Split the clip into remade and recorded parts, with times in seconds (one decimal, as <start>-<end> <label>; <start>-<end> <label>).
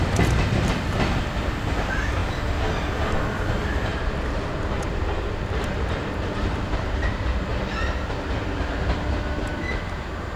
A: 0.0-3.9 recorded; 3.9-7.1 remade; 7.1-10.4 recorded